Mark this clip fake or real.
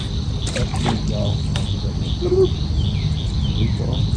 real